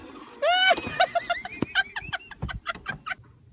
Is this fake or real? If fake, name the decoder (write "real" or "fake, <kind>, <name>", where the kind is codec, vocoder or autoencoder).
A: real